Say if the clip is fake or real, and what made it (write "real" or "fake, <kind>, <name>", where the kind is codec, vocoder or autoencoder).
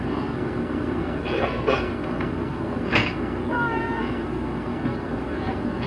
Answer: fake, codec, SNAC